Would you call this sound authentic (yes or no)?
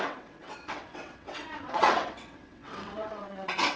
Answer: no